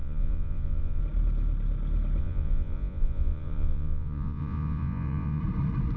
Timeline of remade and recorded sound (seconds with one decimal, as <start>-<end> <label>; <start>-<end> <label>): 0.0-1.0 remade; 1.0-2.2 recorded; 2.2-5.4 remade; 5.4-6.0 recorded